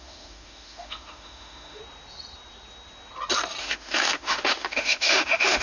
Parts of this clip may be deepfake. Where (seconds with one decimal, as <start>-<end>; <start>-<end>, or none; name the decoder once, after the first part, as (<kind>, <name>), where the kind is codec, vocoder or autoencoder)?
0.0-1.8 (autoencoder, DAC-VAE); 3.6-5.6